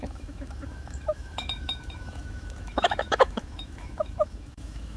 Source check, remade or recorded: remade